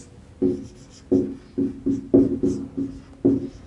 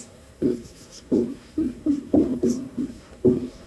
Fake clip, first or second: second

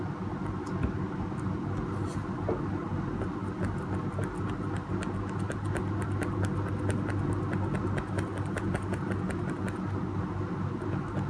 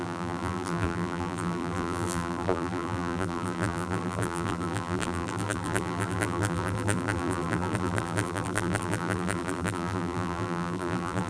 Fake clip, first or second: second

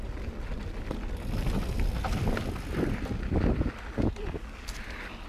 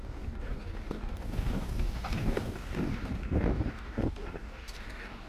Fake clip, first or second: second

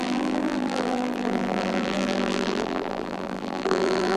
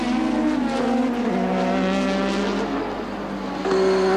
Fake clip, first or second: first